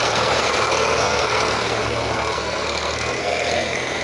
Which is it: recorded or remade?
remade